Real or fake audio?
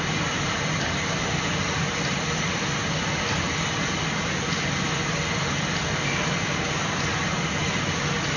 real